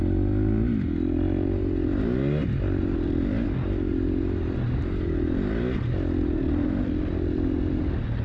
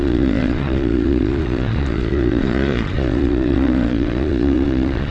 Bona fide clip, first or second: first